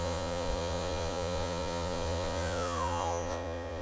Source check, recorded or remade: remade